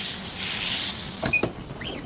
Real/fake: real